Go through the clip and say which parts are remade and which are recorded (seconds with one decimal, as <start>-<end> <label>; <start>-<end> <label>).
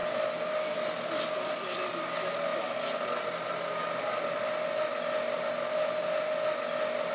0.0-7.1 recorded